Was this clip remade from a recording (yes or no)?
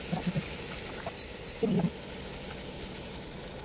no